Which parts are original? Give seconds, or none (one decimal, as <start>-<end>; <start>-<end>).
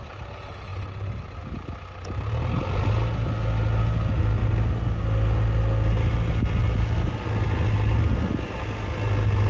0.0-9.5